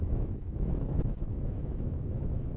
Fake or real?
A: fake